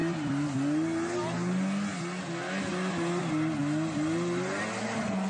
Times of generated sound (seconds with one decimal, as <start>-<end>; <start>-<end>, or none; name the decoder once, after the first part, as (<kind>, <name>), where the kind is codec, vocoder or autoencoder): none